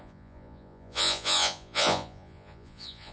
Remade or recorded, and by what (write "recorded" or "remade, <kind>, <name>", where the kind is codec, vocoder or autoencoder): remade, vocoder, Vocos